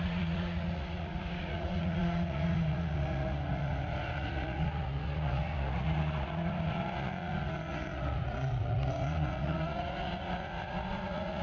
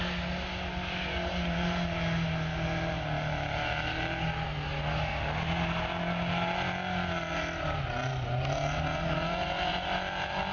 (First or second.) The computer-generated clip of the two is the first